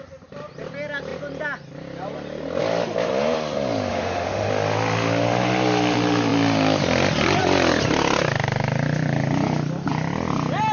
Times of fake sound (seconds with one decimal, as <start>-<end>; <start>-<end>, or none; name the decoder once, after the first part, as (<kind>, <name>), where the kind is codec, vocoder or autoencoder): 3.9-4.5 (autoencoder, DAC-VAE)